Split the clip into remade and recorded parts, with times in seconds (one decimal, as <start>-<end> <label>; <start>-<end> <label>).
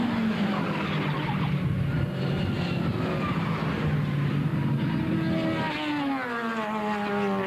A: 0.0-7.5 recorded